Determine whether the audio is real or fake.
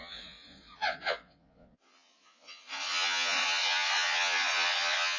fake